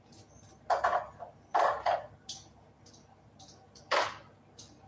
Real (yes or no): yes